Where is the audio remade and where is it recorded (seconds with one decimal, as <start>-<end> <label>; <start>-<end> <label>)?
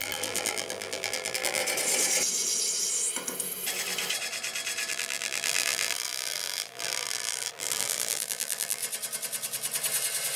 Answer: 0.0-1.6 remade; 1.6-4.9 recorded; 4.9-8.8 remade; 8.8-10.4 recorded